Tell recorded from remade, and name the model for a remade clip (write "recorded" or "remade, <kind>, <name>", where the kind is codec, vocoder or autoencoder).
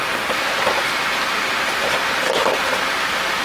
recorded